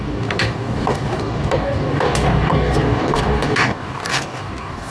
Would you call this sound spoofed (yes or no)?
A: yes